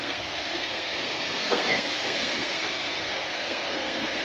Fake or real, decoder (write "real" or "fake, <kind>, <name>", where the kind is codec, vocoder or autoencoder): fake, codec, SNAC